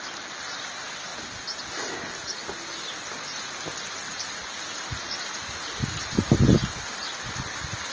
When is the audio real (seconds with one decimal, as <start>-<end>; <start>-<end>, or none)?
0.0-7.9